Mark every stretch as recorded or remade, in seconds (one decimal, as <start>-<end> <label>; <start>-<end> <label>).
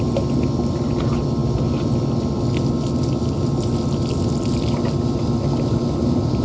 0.0-6.4 recorded